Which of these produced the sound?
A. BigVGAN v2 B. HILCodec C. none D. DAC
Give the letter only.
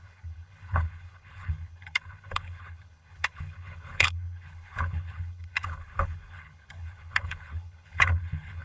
B